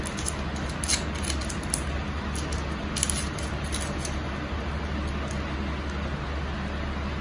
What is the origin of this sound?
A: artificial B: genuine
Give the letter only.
B